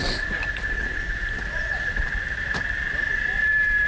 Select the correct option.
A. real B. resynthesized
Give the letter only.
A